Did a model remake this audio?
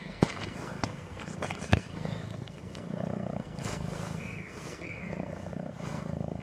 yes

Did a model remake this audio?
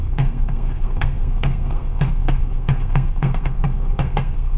yes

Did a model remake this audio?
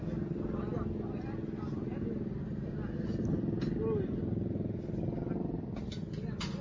no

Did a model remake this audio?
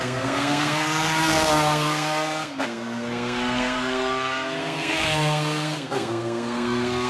yes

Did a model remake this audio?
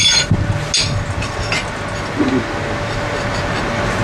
no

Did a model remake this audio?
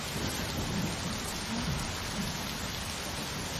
no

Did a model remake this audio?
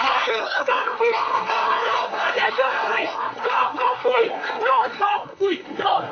yes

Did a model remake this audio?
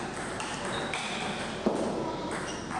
no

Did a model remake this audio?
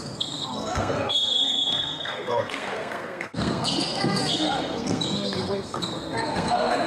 yes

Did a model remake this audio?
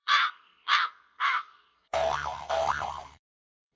yes